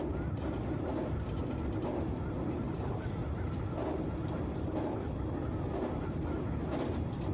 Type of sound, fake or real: real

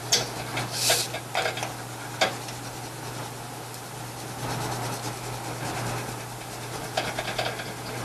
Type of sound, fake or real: real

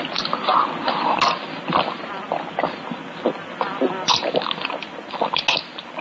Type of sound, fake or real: real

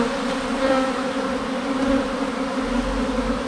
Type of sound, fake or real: real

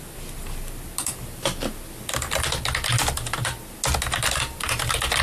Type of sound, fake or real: real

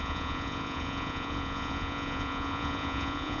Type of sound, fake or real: fake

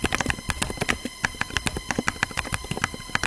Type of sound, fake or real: real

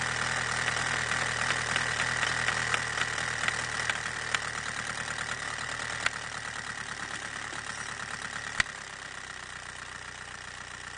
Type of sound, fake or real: real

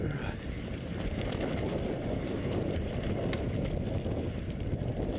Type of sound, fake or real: real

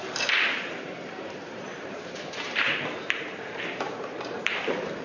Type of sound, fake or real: fake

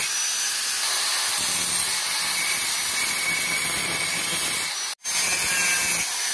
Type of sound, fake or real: real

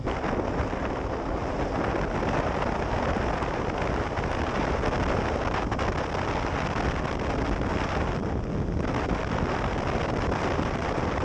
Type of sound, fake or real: real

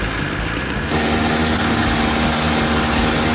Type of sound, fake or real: real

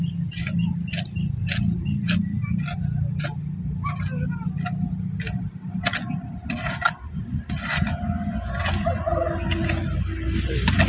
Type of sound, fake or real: real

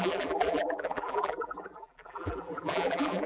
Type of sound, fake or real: fake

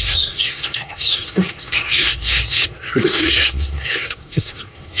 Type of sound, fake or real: fake